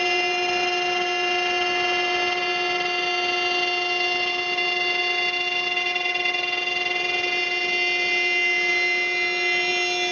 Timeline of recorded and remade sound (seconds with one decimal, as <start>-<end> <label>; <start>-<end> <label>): 0.0-10.1 recorded